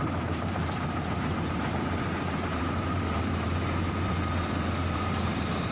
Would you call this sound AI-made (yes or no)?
yes